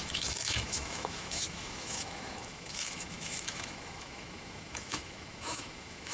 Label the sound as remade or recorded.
remade